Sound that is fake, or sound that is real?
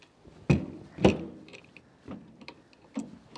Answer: real